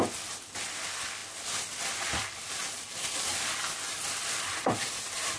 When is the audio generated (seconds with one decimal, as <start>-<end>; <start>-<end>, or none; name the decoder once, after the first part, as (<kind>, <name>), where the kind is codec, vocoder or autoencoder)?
none